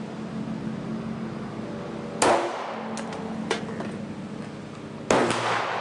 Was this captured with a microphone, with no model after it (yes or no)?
yes